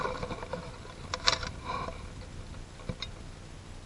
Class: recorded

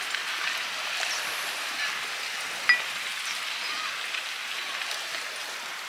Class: recorded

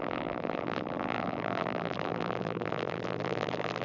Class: remade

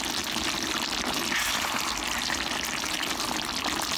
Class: recorded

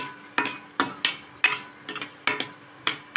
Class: recorded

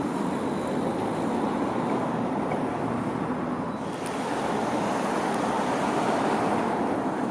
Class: recorded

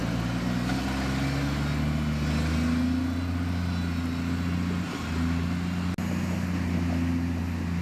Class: recorded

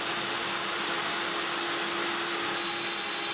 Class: recorded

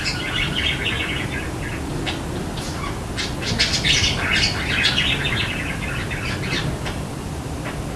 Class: recorded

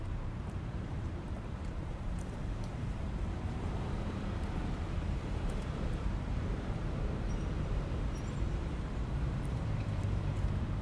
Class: remade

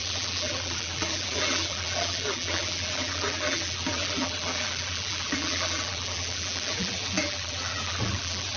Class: remade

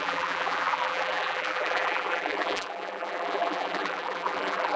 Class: remade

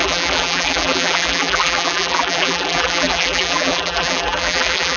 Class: remade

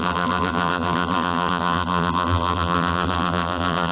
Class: remade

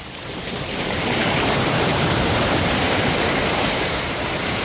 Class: remade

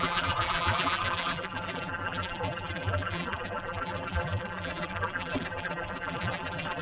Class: remade